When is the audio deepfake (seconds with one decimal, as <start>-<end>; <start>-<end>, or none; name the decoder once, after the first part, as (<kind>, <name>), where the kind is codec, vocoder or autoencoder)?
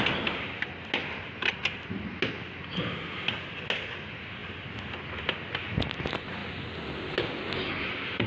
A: none